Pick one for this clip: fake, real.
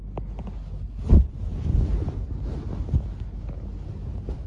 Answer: real